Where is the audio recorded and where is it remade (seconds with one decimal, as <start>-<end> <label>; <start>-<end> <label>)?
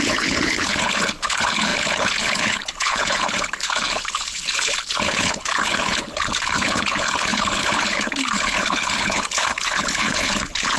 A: 0.0-10.8 remade